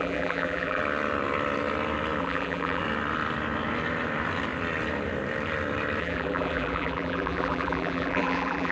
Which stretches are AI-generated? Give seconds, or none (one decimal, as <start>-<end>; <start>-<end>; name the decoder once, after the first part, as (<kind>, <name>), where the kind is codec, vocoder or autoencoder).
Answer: 0.0-0.8 (vocoder, BigVGAN v2); 2.2-2.8; 6.0-8.7